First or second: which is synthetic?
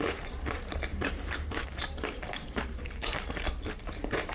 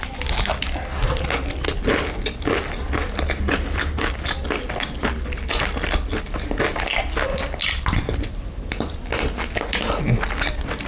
first